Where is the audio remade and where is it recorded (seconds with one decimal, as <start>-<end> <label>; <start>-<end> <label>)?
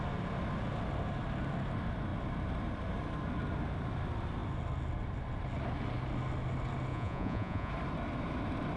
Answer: 0.0-6.9 recorded; 6.9-7.7 remade; 7.7-8.8 recorded